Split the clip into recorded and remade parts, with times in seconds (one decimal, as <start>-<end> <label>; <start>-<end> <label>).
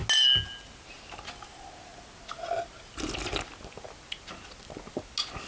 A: 0.0-5.5 recorded